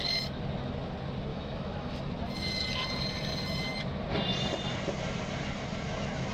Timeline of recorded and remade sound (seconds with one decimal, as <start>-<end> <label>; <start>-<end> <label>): 0.0-1.3 recorded; 1.3-2.0 remade; 2.0-6.3 recorded